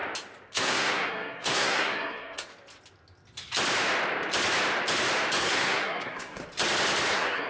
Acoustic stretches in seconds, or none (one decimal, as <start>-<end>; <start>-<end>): 0.0-0.5; 2.5-5.4; 6.4-7.1